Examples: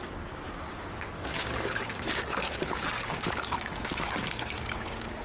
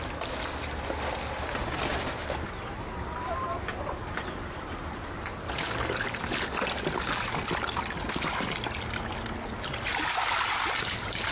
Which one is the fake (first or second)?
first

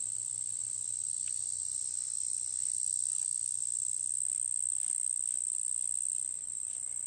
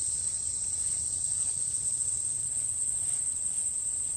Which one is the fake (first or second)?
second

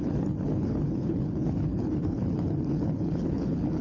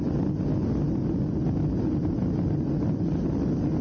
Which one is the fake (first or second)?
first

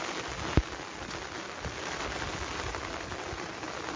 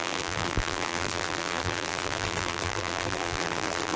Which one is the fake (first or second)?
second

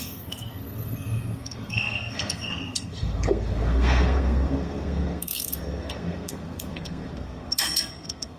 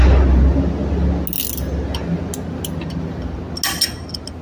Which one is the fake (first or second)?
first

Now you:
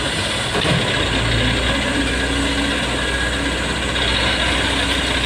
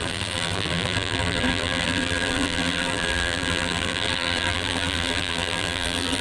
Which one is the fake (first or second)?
second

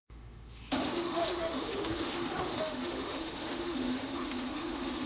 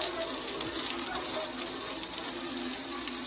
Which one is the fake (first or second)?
first